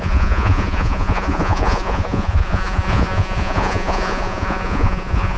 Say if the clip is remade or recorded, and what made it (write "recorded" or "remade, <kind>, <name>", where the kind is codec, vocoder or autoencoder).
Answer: remade, vocoder, Vocos